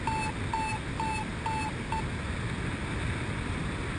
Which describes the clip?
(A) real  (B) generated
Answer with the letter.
A